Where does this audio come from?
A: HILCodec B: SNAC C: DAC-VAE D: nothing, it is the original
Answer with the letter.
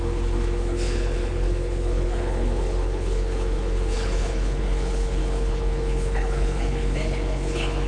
A